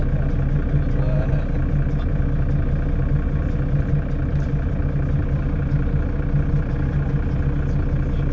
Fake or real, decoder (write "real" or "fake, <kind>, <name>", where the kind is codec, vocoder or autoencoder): real